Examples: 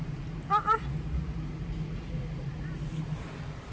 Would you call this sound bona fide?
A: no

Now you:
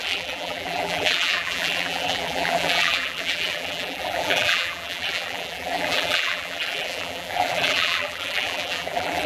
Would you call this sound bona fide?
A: no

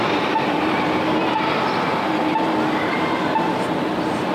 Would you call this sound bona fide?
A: no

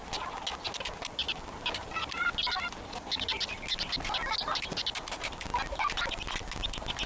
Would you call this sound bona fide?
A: yes